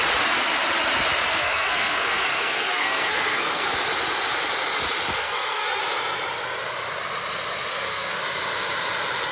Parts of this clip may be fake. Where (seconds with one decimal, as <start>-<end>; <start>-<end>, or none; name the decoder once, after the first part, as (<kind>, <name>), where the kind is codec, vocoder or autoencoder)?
1.3-3.7 (codec, SNAC); 5.2-5.8; 7.7-8.2